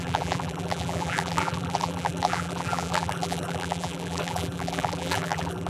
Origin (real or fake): fake